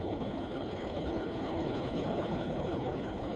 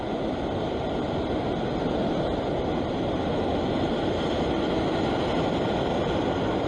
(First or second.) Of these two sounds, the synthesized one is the first